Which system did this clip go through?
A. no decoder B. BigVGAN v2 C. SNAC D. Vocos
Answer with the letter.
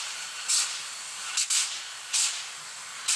A